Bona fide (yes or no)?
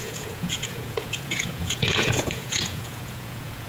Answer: no